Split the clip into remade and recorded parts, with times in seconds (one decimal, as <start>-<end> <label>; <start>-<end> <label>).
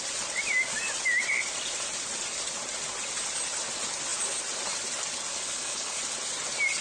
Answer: 0.0-5.3 recorded; 5.3-6.0 remade; 6.0-6.8 recorded